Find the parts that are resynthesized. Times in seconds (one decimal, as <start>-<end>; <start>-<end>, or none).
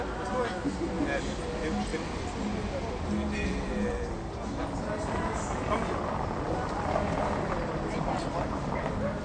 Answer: none